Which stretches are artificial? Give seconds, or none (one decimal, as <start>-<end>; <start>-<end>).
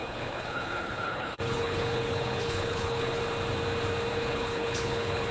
0.0-3.2; 4.1-5.3